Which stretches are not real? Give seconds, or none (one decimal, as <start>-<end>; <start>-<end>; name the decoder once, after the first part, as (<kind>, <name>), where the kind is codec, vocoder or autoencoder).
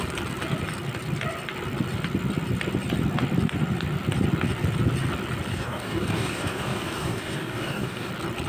5.5-8.1 (codec, DAC)